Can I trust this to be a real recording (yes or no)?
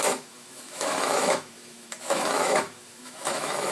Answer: no